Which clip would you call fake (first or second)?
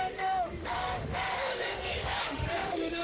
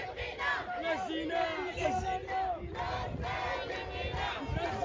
first